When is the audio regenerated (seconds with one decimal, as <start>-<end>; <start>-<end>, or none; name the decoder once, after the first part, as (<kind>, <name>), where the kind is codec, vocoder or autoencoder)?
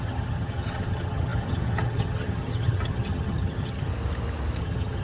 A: 0.0-3.9 (vocoder, HiFi-GAN); 4.6-5.0